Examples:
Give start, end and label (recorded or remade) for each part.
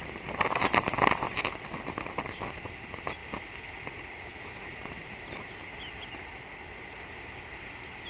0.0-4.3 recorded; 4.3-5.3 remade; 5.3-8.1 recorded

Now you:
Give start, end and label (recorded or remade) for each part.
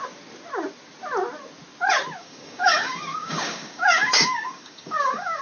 0.0-2.2 recorded; 2.2-5.4 remade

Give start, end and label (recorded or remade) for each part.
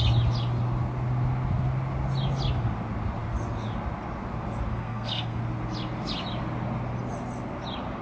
0.0-4.7 recorded; 4.7-5.4 remade; 5.4-8.0 recorded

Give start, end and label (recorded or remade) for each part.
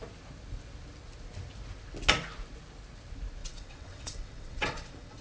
0.0-3.4 recorded; 3.4-5.2 remade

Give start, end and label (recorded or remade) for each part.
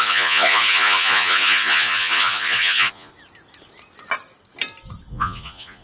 0.0-3.1 remade; 3.1-5.1 recorded; 5.1-5.8 remade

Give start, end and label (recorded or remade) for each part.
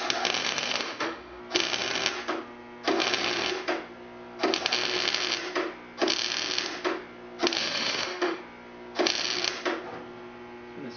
0.0-0.4 recorded; 0.4-1.4 remade; 1.4-7.6 recorded; 7.6-8.4 remade; 8.4-11.0 recorded